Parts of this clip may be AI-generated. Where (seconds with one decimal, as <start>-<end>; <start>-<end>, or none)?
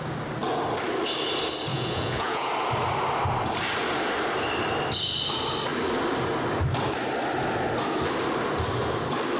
1.7-2.5